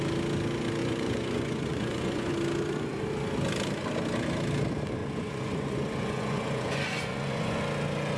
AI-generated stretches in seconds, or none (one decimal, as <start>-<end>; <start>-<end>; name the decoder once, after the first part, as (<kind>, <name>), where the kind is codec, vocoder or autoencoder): 0.8-2.3 (vocoder, Vocos); 5.0-7.6